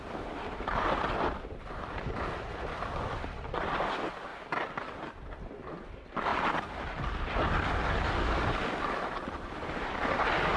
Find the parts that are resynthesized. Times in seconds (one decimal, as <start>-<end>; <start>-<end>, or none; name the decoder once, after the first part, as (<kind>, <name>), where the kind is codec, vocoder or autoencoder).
none